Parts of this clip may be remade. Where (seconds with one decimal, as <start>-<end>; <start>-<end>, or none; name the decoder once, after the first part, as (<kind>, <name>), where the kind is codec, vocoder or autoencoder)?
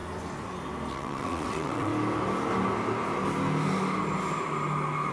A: 0.9-1.9 (vocoder, WaveNeXt)